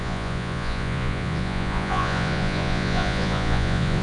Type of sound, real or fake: fake